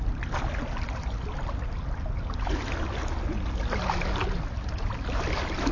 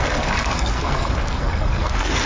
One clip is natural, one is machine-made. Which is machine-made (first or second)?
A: second